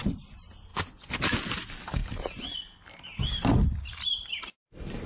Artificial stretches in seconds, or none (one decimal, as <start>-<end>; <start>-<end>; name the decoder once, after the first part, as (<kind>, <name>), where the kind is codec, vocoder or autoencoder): 0.0-0.7 (vocoder, BigVGAN v2); 1.5-5.1